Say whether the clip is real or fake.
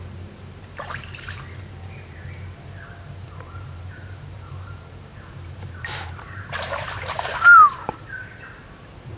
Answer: fake